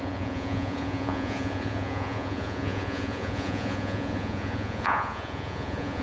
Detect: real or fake fake